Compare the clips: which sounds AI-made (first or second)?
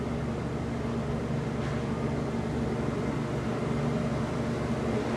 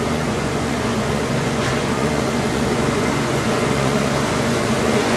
second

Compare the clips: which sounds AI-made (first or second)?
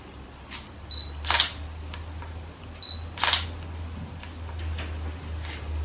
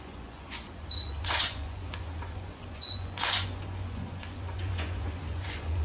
second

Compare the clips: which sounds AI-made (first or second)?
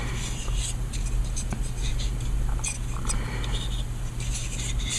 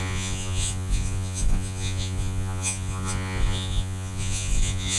second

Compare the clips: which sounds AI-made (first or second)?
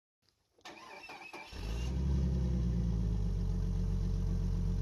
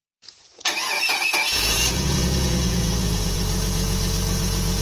second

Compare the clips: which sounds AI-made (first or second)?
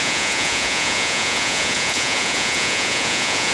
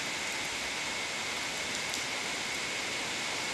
first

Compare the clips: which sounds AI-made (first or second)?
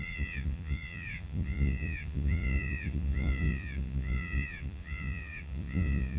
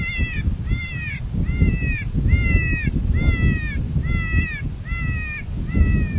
first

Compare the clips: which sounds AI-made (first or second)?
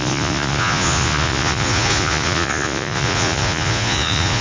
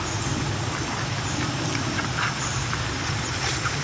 first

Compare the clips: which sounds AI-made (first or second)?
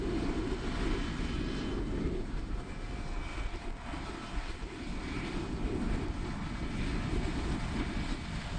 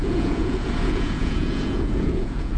second